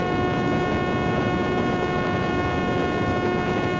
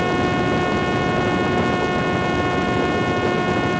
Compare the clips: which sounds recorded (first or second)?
second